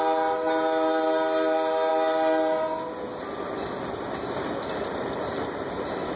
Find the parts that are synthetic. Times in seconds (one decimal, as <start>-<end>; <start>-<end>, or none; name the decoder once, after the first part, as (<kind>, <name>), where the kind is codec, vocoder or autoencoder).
none